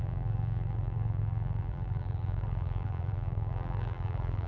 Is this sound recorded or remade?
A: remade